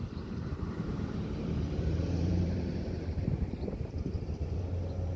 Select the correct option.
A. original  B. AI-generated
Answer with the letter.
B